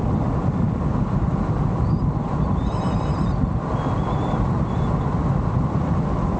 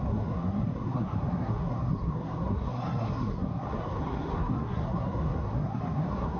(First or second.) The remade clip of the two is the second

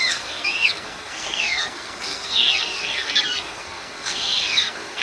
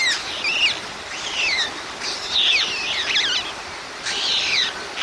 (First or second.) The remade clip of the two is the first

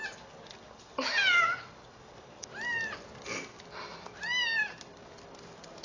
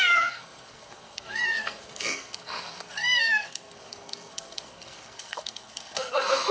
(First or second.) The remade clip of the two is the second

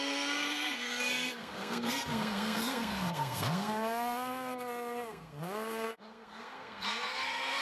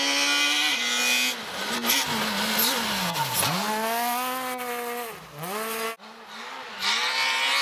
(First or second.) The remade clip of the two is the first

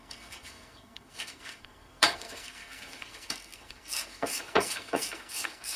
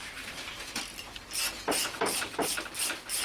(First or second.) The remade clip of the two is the first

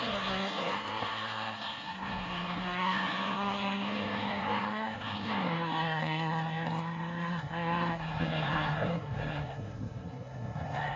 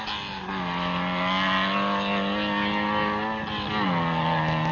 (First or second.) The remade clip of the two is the first